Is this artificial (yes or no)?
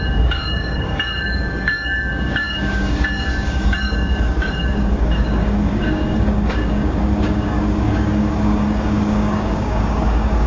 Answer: yes